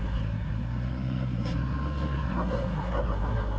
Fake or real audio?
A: fake